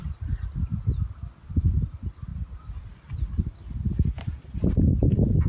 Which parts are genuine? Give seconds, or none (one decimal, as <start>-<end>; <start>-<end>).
0.0-5.5